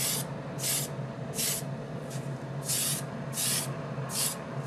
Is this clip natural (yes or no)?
yes